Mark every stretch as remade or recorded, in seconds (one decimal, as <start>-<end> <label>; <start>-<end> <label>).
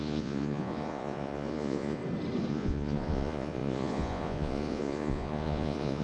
0.0-2.0 remade; 2.0-2.5 recorded; 2.5-6.0 remade